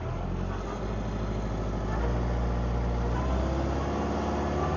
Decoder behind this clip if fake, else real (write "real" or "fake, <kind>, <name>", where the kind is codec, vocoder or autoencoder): real